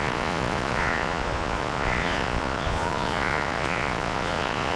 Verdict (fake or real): fake